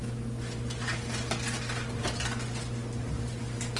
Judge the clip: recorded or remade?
recorded